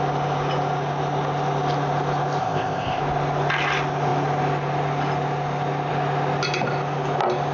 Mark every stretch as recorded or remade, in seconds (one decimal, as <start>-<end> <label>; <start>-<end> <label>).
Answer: 0.0-2.4 recorded; 2.4-3.0 remade; 3.0-7.5 recorded